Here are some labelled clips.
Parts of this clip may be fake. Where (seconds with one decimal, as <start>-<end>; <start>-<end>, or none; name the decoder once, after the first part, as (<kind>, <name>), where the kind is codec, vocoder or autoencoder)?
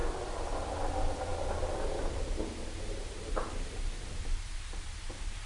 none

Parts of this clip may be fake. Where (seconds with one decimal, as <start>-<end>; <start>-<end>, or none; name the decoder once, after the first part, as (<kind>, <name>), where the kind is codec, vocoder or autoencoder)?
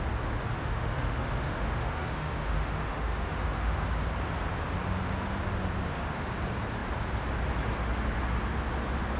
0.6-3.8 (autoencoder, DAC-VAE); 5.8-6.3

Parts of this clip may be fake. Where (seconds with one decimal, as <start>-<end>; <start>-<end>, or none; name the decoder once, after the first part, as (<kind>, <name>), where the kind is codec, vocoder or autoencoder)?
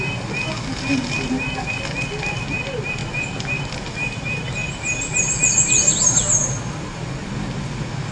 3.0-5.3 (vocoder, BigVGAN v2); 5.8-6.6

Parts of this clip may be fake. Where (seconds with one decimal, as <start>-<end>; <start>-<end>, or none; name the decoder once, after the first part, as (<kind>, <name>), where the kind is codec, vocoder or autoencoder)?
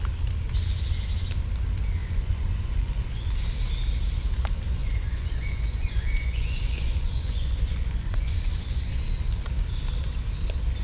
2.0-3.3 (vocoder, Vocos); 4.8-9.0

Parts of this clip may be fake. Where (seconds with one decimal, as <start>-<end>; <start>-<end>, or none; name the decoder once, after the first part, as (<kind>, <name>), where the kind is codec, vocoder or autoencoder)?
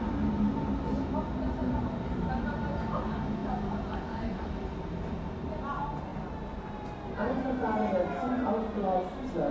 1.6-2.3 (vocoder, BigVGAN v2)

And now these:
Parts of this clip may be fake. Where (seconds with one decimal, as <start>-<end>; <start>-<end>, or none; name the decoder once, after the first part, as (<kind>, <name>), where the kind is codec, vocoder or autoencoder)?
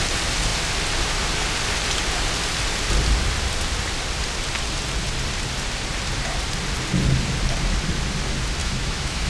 8.6-9.3 (autoencoder, DAC-VAE)